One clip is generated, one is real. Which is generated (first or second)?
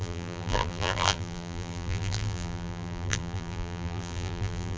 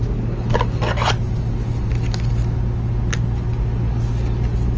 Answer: first